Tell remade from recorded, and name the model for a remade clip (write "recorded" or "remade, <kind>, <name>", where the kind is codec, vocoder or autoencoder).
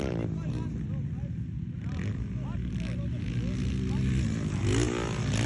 recorded